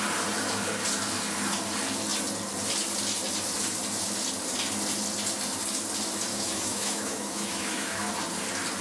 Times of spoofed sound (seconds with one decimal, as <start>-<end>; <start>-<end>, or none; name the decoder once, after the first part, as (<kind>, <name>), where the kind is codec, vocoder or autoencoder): 6.3-8.1 (autoencoder, DAC-VAE)